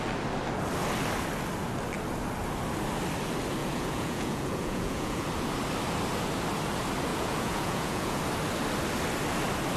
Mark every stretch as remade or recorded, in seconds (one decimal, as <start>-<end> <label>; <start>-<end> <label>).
0.0-3.6 recorded; 3.6-5.3 remade; 5.3-7.1 recorded; 7.1-8.2 remade; 8.2-9.8 recorded